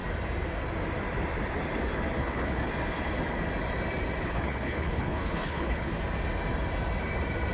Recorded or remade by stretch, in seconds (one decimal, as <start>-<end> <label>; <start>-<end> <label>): 0.0-2.2 recorded; 2.2-2.7 remade; 2.7-4.2 recorded; 4.2-5.9 remade; 5.9-7.5 recorded